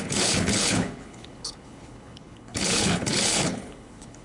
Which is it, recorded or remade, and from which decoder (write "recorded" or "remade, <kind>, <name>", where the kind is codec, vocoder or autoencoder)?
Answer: remade, codec, HILCodec